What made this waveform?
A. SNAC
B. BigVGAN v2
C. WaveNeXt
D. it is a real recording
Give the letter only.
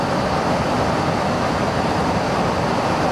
B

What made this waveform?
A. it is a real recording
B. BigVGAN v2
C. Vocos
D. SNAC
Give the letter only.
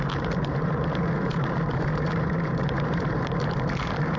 B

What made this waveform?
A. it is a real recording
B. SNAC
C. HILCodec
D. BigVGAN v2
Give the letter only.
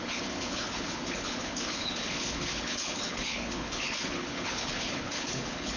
C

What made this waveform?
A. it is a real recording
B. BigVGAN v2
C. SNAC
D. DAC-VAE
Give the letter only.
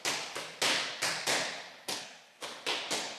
A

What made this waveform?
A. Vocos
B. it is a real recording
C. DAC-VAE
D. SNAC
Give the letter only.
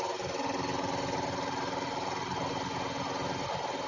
B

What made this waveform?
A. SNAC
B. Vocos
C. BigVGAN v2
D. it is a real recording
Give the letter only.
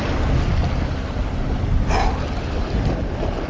D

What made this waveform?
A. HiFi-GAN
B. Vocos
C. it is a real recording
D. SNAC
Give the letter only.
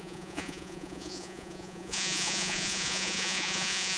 B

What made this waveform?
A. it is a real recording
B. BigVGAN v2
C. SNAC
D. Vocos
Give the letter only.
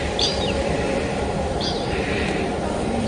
B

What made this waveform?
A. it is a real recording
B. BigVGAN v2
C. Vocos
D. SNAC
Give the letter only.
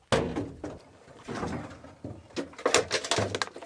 A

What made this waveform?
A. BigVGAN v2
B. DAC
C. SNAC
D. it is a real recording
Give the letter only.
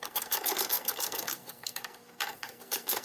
C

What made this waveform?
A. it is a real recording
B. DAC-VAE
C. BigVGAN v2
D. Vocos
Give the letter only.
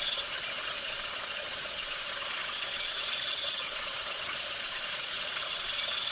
D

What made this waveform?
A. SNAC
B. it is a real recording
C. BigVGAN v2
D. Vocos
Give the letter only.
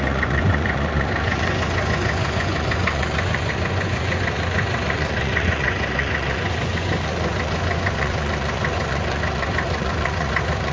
D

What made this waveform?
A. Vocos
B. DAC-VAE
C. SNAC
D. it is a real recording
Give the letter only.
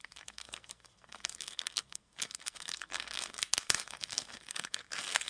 C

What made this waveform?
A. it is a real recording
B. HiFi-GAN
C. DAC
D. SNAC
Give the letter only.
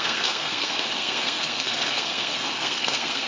D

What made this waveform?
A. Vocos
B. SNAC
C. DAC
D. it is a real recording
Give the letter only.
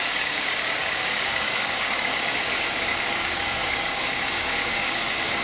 C